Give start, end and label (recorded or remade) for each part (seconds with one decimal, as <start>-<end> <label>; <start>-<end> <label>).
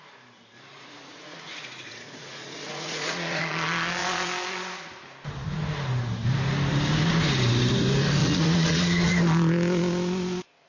0.0-0.7 recorded; 0.7-3.4 remade; 3.4-8.2 recorded; 8.2-9.2 remade; 9.2-10.7 recorded